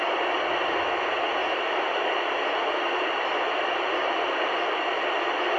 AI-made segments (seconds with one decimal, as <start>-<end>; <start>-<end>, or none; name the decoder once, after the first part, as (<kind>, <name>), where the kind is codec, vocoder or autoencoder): 1.4-4.8 (vocoder, BigVGAN v2)